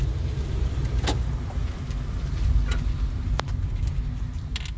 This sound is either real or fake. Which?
real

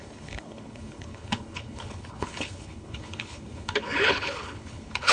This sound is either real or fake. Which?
fake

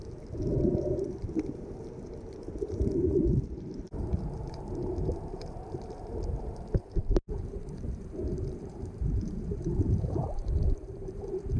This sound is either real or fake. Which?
fake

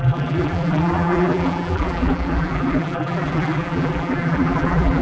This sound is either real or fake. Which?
fake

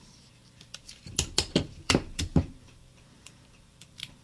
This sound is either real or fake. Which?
fake